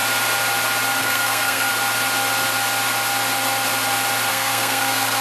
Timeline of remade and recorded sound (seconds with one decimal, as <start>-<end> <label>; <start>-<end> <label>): 0.0-1.0 recorded; 1.0-1.7 remade; 1.7-4.3 recorded; 4.3-5.2 remade